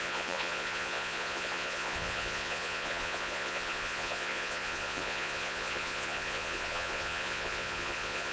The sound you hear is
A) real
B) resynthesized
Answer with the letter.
B